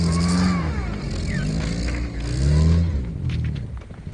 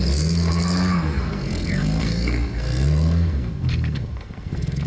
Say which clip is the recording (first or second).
first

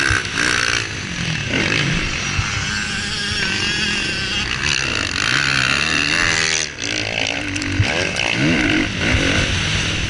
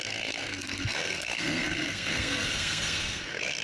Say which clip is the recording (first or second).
first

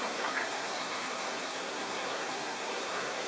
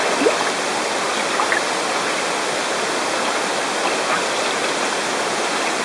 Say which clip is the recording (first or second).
second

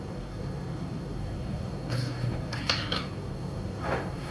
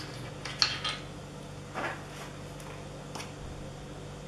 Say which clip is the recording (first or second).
second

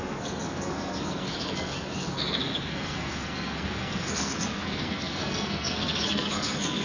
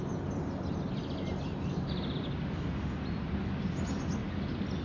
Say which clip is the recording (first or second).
second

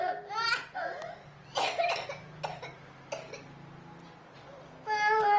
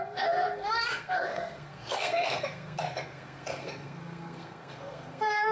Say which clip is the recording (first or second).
first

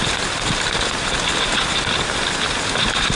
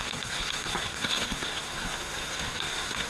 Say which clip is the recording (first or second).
first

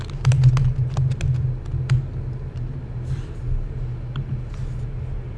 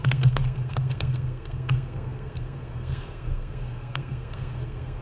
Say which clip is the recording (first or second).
first